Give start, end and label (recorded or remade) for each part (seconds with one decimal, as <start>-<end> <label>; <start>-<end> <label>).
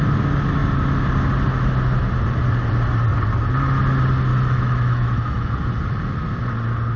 0.0-4.3 recorded; 4.3-5.5 remade; 5.5-7.0 recorded